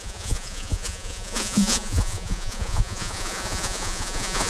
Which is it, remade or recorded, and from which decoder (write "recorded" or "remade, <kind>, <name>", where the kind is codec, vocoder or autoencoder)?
remade, vocoder, Vocos